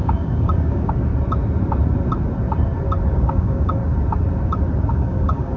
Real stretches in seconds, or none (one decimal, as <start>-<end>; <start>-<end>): 1.1-3.1; 3.8-4.9

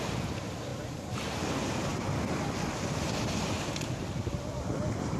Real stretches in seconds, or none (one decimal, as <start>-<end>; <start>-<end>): 0.0-5.2

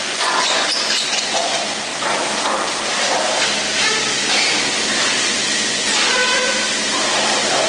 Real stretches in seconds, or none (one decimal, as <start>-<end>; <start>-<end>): 1.9-5.6; 6.2-7.7

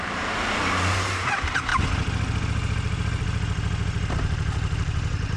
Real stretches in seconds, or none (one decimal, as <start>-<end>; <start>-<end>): 1.7-4.1

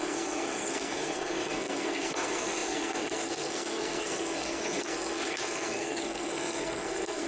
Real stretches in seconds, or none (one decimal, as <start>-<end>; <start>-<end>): none

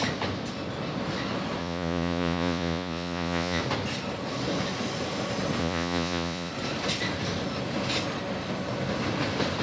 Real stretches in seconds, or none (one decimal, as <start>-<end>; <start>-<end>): 0.0-1.6; 3.6-5.6; 6.5-9.6

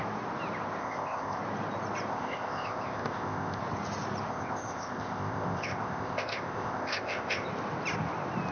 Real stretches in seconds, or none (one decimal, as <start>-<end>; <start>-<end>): 0.0-0.8; 1.4-2.1; 3.6-4.3; 7.5-8.5

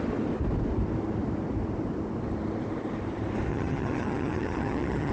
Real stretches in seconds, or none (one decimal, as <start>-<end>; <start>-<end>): 0.0-3.5